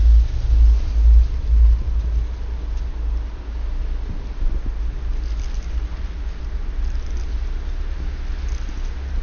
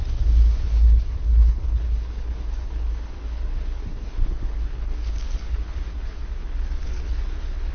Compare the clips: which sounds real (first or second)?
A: first